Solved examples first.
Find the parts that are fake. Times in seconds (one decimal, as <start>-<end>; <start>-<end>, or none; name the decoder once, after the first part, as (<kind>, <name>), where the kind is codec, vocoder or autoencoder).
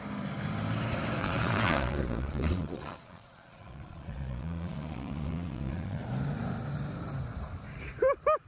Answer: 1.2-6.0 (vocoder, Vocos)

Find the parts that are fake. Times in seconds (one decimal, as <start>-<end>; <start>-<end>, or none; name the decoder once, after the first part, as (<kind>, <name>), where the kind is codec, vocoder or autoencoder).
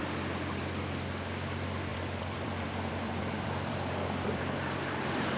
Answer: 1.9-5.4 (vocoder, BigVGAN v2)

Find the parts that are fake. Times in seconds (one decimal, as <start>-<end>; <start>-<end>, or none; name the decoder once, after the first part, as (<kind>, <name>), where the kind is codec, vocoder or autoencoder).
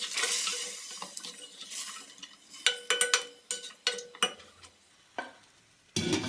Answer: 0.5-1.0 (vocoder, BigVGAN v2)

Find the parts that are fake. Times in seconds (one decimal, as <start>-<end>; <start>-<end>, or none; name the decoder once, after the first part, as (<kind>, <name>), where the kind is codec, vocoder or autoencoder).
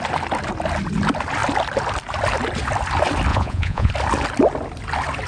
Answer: 3.3-3.9 (vocoder, Vocos)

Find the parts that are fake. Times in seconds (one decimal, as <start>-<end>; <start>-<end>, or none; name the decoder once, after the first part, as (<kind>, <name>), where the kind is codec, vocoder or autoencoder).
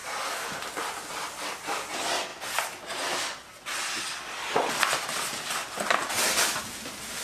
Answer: none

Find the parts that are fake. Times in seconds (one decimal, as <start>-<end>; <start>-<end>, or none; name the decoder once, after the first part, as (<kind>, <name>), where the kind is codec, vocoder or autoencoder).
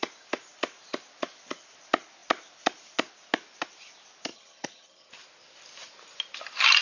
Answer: 4.3-5.1 (vocoder, HiFi-GAN)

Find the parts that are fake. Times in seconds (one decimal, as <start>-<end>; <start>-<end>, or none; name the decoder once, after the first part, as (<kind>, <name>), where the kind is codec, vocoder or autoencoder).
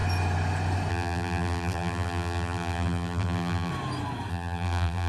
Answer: 0.9-3.7 (vocoder, BigVGAN v2); 4.3-5.1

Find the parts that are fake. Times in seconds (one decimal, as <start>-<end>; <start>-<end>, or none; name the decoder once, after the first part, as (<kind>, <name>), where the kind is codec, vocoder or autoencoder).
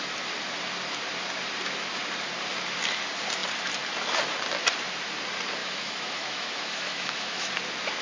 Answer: 5.6-7.5 (autoencoder, DAC-VAE)